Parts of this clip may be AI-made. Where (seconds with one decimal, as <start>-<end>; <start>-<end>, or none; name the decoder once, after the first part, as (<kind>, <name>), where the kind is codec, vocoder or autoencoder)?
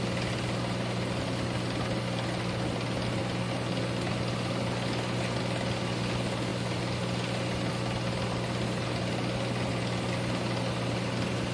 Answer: none